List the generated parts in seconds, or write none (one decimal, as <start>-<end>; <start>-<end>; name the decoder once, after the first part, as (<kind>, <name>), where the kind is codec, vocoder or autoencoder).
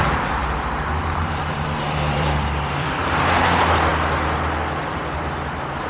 0.4-3.0 (vocoder, BigVGAN v2)